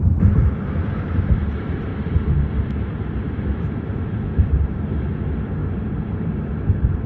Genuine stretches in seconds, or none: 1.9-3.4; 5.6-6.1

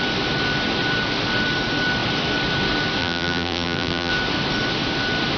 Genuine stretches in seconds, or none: 0.0-3.0; 4.1-5.4

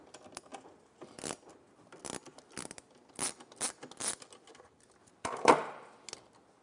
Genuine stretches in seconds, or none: 0.0-5.0; 5.5-6.6